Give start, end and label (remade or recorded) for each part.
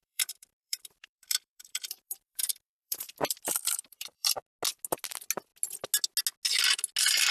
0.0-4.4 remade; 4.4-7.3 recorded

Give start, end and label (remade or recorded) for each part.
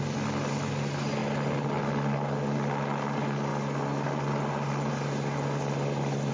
0.0-6.3 recorded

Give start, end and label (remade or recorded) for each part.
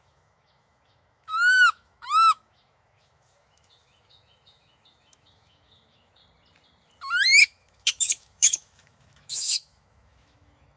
0.0-6.2 remade; 6.2-7.4 recorded; 7.4-10.8 remade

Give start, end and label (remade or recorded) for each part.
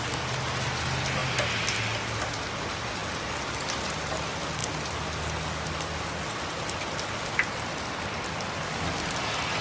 0.0-9.6 recorded